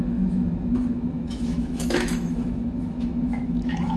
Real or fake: fake